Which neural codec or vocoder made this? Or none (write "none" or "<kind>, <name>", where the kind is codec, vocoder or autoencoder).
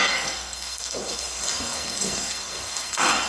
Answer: codec, SNAC